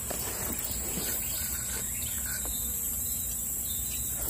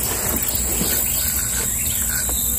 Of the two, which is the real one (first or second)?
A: second